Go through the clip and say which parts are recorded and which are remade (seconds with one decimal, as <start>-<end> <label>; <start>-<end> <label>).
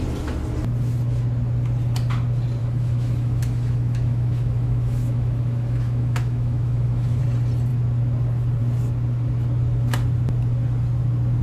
0.0-2.6 recorded; 2.6-7.2 remade; 7.2-11.4 recorded